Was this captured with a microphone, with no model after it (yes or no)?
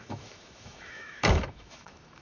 no